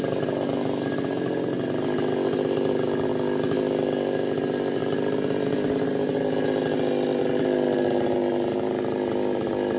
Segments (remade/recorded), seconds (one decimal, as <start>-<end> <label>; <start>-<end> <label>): 0.0-9.8 recorded